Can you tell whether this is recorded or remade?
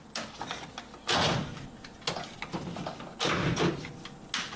recorded